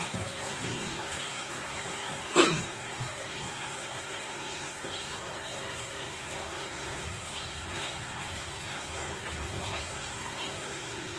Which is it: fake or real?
fake